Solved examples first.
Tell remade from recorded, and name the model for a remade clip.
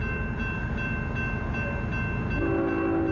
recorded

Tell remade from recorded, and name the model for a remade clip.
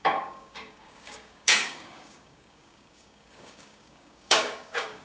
remade, codec, DAC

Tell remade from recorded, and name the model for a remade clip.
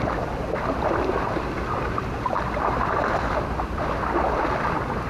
recorded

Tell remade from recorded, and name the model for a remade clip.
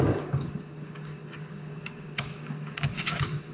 remade, codec, DAC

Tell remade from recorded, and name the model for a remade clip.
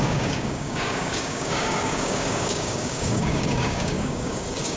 remade, codec, DAC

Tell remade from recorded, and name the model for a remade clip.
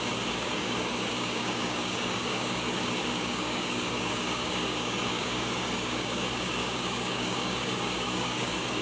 remade, codec, DAC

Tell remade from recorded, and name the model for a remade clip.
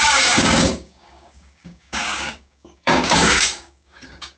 remade, codec, DAC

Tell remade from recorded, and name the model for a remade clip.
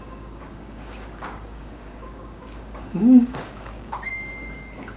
remade, codec, DAC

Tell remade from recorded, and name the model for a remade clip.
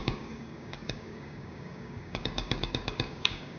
remade, codec, DAC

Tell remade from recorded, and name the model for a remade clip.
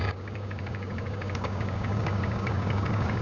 remade, codec, DAC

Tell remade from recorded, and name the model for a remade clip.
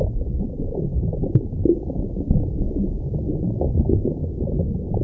remade, codec, DAC